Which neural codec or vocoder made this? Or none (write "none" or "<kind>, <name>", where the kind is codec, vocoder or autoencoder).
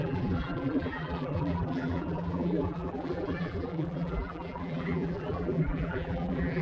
vocoder, BigVGAN v2